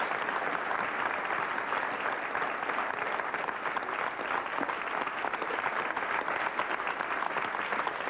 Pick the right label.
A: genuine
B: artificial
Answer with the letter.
A